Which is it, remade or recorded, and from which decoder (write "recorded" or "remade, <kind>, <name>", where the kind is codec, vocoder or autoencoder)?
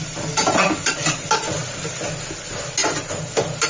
recorded